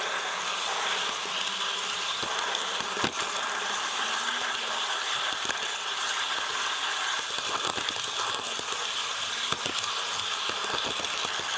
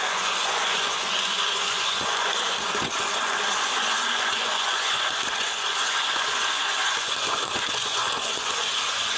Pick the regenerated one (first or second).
second